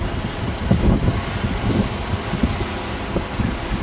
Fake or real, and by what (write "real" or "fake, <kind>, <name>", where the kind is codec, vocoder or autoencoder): real